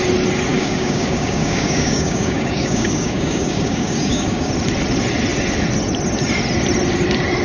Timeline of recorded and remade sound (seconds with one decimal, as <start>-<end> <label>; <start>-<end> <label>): 0.0-0.5 recorded; 0.5-4.5 remade; 4.5-7.4 recorded